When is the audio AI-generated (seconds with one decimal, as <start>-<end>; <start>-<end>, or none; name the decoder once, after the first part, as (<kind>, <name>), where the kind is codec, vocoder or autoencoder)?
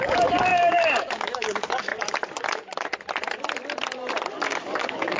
0.0-1.9 (codec, DAC); 4.3-5.2